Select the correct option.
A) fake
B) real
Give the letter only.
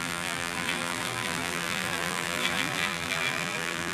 A